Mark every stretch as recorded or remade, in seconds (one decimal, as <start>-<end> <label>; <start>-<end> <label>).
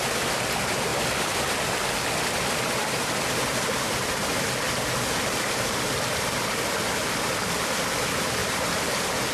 0.0-8.4 recorded; 8.4-8.9 remade; 8.9-9.3 recorded